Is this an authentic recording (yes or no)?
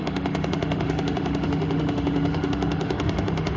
no